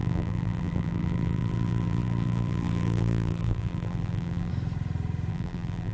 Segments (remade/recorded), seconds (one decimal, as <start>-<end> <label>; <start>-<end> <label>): 0.0-4.5 remade; 4.5-5.3 recorded; 5.3-5.9 remade